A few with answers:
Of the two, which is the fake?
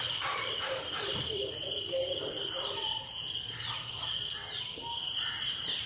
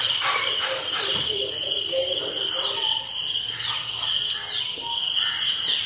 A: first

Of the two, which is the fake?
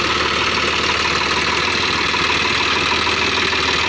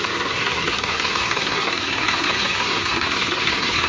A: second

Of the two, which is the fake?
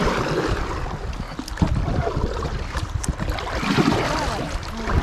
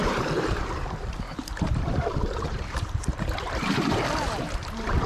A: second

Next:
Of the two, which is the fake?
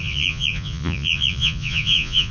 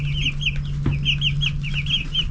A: first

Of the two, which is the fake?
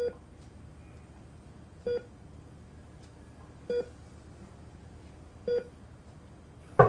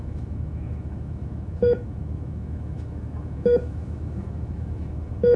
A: second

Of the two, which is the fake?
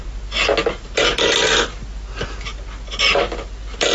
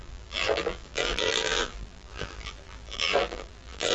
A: second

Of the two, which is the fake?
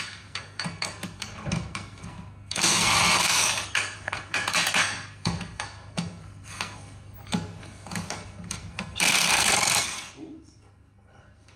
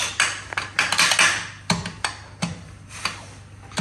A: first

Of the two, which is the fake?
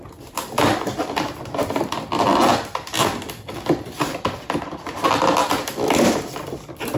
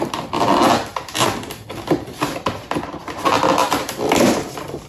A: first